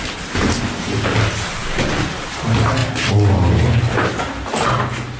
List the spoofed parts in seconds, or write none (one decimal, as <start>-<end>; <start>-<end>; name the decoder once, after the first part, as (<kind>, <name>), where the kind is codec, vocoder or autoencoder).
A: none